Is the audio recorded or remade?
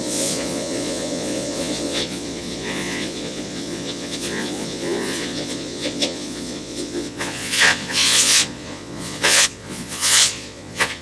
remade